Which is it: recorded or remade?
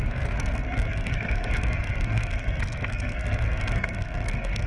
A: remade